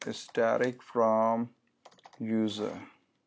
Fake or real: real